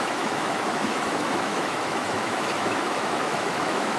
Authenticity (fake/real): fake